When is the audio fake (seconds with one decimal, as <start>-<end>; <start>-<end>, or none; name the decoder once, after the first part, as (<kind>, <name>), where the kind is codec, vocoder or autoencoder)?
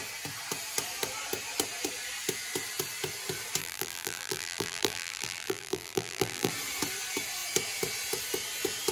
3.6-6.5 (vocoder, BigVGAN v2)